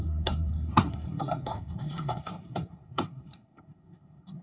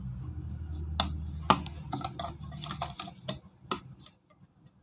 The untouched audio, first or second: second